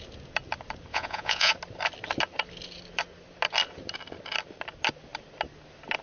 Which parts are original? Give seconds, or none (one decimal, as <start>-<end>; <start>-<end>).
0.0-0.9; 1.5-6.0

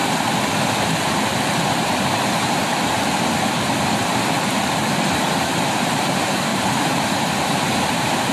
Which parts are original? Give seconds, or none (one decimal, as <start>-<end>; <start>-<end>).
0.0-1.7; 2.6-5.4

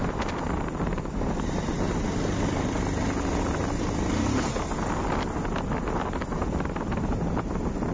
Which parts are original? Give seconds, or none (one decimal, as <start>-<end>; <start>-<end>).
0.0-6.4; 7.3-7.9